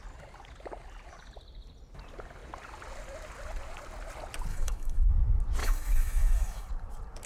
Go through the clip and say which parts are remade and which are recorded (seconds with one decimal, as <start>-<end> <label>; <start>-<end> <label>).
0.0-4.5 recorded; 4.5-5.1 remade; 5.1-5.6 recorded; 5.6-6.7 remade; 6.7-7.3 recorded

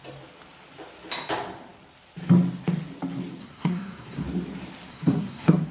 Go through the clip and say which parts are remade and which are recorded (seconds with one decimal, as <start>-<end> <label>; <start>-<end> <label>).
0.0-3.4 recorded; 3.4-4.2 remade; 4.2-4.9 recorded; 4.9-5.7 remade

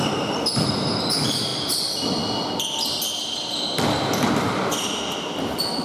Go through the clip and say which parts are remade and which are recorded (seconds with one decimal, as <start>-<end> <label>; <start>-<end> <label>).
0.0-5.8 recorded

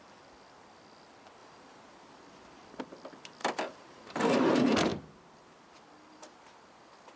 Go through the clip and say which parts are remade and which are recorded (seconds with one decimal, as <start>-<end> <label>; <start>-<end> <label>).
0.0-1.4 recorded; 1.4-2.8 remade; 2.8-3.4 recorded; 3.4-4.2 remade; 4.2-4.9 recorded; 4.9-7.2 remade